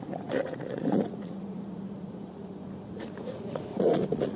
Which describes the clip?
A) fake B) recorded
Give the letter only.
A